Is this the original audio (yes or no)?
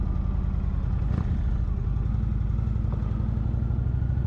yes